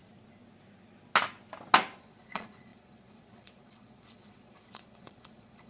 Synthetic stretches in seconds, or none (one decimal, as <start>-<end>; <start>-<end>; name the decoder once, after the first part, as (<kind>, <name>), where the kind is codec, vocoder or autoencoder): 2.0-5.7 (vocoder, Vocos)